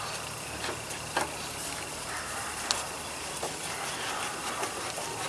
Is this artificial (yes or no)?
no